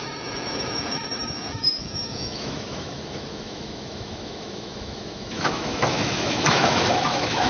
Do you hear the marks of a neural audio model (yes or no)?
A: yes